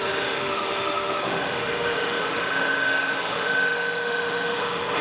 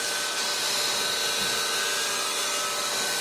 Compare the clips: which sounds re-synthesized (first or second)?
first